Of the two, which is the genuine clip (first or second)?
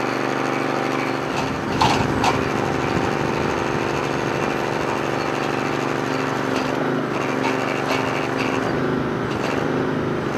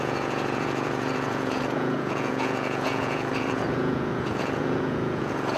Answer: first